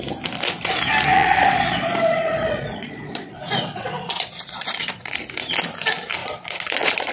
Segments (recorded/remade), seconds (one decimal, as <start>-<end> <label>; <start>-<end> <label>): 0.0-1.1 recorded; 1.1-5.2 remade; 5.2-6.2 recorded; 6.2-7.1 remade